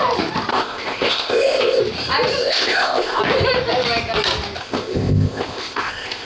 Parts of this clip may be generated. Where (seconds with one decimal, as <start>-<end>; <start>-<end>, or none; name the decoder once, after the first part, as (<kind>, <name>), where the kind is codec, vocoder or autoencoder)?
0.5-1.8 (codec, ZipCodec); 2.4-3.2; 4.6-6.3